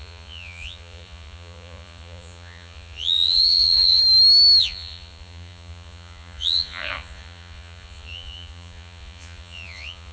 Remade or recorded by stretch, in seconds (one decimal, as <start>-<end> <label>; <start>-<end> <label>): 0.0-4.0 remade; 4.0-4.6 recorded; 4.6-10.1 remade